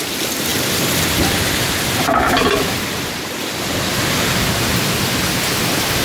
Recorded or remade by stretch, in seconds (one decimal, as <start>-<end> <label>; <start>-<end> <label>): 0.0-6.0 recorded